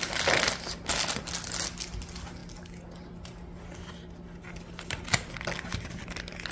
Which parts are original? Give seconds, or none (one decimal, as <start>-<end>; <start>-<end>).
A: 0.0-6.5